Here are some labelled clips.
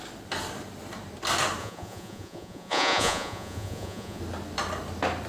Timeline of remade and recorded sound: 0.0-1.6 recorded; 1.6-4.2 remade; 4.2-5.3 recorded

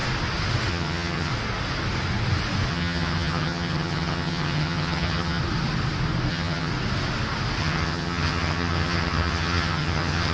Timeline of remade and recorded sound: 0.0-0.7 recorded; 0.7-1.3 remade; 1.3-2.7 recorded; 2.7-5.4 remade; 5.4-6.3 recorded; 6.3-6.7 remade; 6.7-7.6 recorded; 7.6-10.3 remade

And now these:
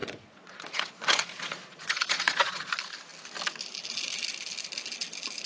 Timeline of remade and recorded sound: 0.0-2.7 remade; 2.7-5.5 recorded

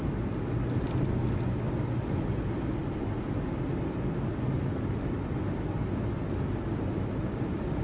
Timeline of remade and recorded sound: 0.0-7.8 recorded